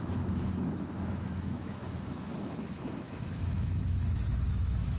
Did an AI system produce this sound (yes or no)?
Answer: yes